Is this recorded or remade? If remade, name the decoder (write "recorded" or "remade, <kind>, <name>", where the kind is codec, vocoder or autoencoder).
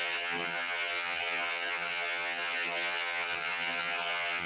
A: remade, vocoder, HiFi-GAN